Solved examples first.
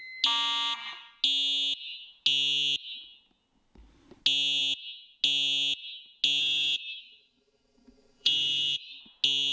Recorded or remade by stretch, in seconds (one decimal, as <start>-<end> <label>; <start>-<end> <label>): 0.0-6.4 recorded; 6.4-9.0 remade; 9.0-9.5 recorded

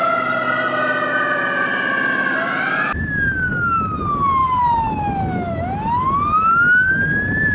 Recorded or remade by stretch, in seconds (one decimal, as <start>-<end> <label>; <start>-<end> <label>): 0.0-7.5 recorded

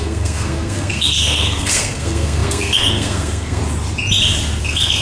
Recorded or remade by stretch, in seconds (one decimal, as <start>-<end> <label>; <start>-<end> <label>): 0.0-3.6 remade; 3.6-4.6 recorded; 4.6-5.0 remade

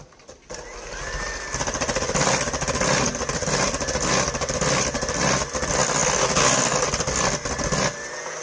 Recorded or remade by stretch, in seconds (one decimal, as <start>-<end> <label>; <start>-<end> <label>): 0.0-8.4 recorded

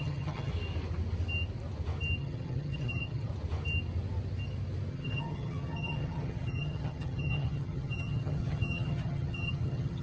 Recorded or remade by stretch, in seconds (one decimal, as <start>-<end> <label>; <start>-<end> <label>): 0.0-0.5 remade; 0.5-2.2 recorded; 2.2-3.3 remade; 3.3-4.9 recorded; 4.9-10.0 remade

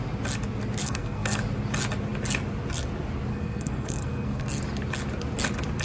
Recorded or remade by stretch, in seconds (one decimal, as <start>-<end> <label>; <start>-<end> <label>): 0.0-0.8 recorded; 0.8-1.4 remade; 1.4-3.3 recorded; 3.3-4.6 remade; 4.6-5.8 recorded